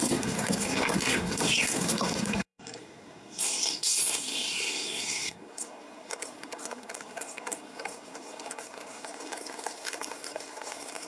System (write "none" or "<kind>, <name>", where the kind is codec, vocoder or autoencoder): codec, SNAC